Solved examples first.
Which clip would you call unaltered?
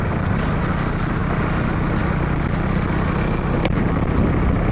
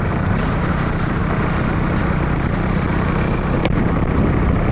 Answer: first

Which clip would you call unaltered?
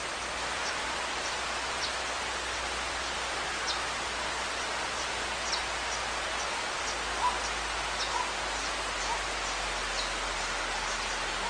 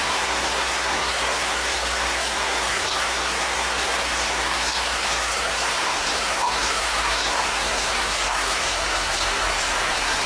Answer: first